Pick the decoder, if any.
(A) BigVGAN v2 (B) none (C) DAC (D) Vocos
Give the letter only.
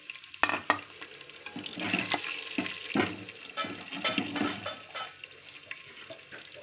B